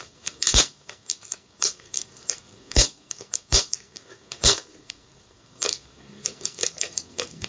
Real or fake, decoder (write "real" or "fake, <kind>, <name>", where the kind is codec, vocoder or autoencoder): fake, codec, SNAC